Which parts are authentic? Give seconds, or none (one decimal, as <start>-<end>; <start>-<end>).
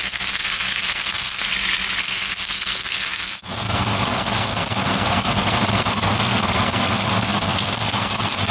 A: 1.5-2.0